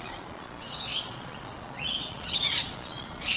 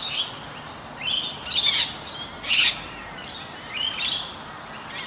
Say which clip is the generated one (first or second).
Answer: first